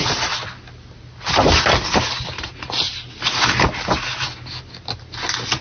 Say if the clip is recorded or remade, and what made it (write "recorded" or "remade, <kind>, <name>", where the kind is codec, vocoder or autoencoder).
recorded